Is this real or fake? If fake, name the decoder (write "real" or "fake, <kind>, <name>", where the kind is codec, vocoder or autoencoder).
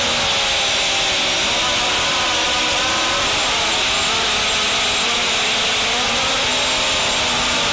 real